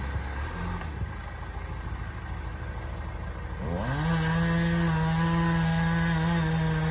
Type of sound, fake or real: real